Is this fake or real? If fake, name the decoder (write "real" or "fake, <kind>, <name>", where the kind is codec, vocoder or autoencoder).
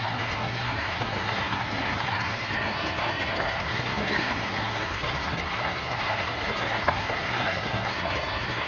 fake, codec, SNAC